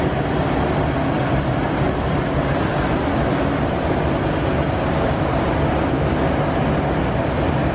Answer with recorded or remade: recorded